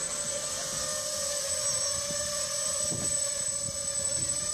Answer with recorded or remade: recorded